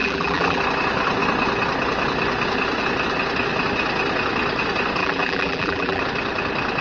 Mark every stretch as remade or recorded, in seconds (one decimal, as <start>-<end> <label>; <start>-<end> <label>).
0.0-0.6 remade; 0.6-5.0 recorded; 5.0-6.0 remade; 6.0-6.8 recorded